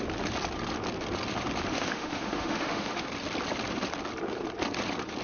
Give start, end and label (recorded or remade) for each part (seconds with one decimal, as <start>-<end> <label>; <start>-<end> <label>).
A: 0.0-1.7 recorded; 1.7-3.1 remade; 3.1-5.2 recorded